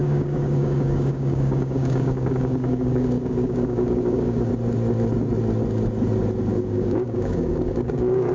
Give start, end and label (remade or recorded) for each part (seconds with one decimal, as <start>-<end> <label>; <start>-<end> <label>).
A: 0.0-4.5 remade; 4.5-6.5 recorded; 6.5-8.3 remade